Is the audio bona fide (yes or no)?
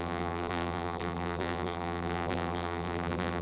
no